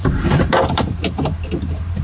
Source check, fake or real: fake